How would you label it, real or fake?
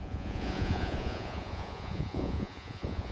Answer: fake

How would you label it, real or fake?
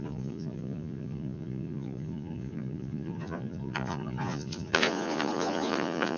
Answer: fake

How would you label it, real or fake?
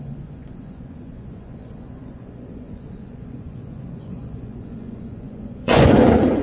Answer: fake